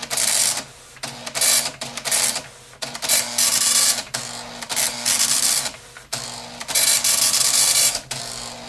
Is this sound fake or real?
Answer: real